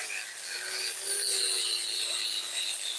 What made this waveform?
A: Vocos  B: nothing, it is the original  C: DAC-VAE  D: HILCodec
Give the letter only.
B